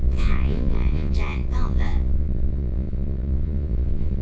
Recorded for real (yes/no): no